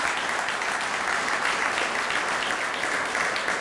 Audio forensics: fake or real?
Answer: real